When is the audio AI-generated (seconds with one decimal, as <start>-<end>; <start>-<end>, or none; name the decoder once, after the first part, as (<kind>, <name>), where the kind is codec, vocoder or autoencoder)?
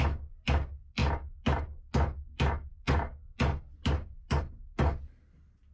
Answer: none